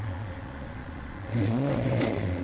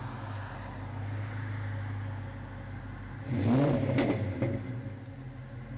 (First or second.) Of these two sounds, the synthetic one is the first